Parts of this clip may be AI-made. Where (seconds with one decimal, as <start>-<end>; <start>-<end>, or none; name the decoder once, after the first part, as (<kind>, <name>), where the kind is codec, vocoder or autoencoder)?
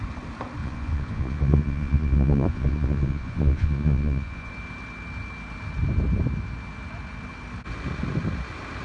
0.6-4.5 (vocoder, Vocos)